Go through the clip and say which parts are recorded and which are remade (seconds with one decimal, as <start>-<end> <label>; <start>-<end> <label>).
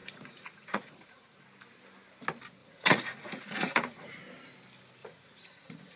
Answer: 0.0-1.4 remade; 1.4-2.6 recorded; 2.6-4.2 remade; 4.2-5.0 recorded; 5.0-6.0 remade